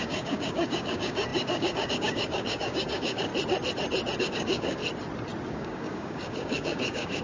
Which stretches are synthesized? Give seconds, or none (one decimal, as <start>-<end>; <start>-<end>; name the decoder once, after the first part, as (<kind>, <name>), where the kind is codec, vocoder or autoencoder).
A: 0.0-3.3 (codec, DAC); 4.2-4.8; 5.5-7.2